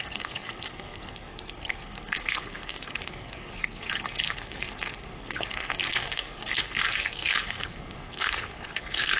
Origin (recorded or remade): remade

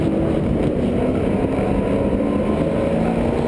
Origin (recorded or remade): recorded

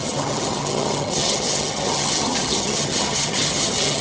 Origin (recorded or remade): remade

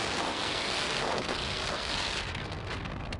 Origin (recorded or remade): remade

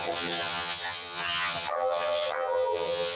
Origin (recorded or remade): remade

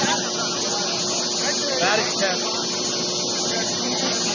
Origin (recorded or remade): recorded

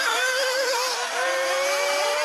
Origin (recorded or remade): remade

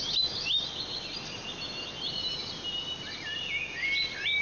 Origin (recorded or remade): recorded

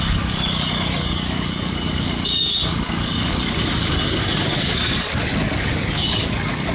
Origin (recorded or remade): remade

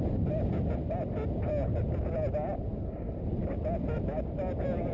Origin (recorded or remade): recorded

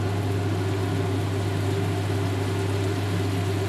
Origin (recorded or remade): recorded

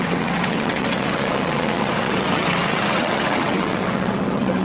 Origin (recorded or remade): remade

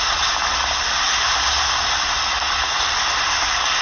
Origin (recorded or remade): recorded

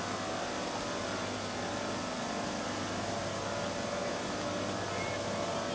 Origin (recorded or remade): recorded